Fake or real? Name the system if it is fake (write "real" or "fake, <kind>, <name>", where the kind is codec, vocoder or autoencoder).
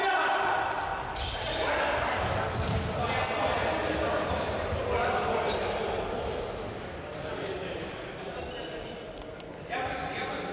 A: real